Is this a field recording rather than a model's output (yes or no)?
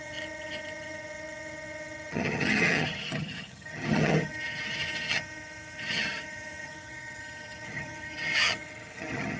no